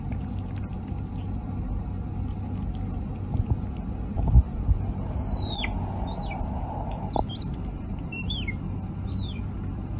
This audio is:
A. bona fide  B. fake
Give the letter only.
A